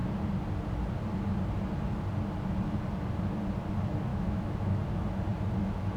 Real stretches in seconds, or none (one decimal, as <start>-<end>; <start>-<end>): 0.0-4.1; 4.8-6.0